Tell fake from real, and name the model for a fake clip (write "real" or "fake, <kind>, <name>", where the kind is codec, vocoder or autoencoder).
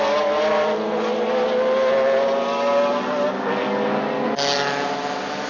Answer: real